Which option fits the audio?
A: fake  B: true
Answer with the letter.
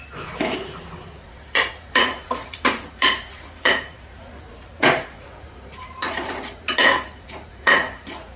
A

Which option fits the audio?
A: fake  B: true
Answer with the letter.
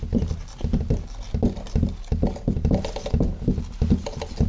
B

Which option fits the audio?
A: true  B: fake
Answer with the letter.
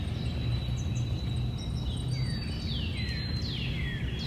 A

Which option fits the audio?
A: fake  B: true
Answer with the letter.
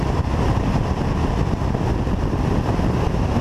B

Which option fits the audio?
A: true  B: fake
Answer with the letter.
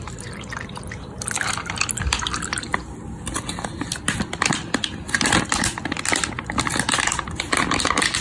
A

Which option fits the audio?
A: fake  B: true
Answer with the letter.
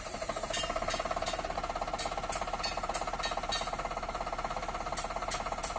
B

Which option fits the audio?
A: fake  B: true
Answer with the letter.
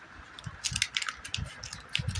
B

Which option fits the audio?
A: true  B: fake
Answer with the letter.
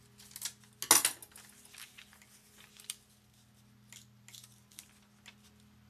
A